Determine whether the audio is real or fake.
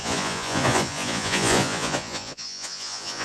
fake